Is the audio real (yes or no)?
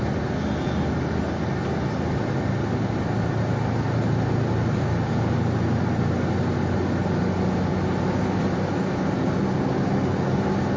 yes